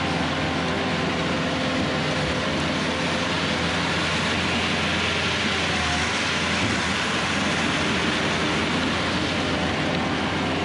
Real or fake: real